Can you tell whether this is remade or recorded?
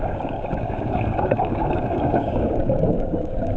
remade